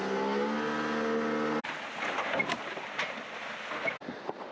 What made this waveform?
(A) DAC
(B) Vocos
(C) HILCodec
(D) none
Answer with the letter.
D